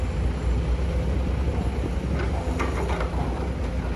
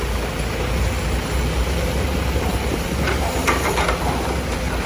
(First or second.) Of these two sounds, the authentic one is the first